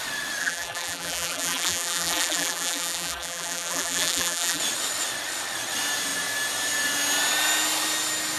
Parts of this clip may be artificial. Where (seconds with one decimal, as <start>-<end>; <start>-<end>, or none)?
0.4-4.6